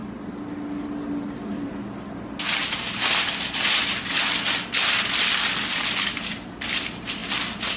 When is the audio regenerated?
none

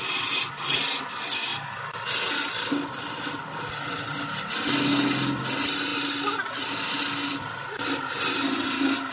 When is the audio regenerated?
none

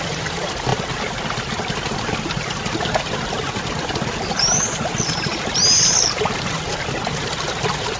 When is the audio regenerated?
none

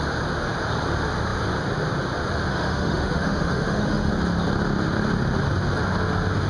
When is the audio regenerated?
2.5-4.1 (autoencoder, DAC-VAE)

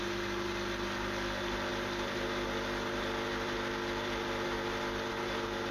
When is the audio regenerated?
none

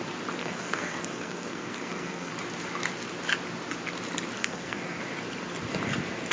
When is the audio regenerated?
0.4-2.3 (codec, SNAC); 4.4-5.0